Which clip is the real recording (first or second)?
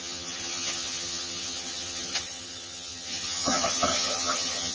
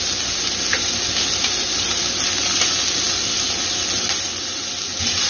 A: second